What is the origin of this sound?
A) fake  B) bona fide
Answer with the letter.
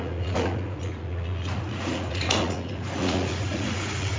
A